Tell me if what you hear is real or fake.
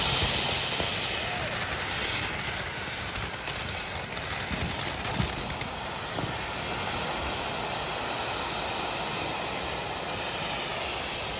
real